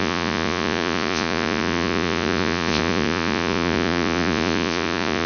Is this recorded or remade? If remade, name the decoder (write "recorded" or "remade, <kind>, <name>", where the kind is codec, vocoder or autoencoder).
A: remade, vocoder, Vocos